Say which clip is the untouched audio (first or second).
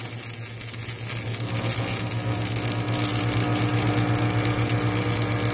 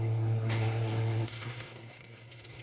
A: first